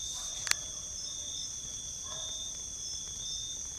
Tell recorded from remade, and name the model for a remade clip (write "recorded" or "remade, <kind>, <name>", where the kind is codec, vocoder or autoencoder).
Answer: recorded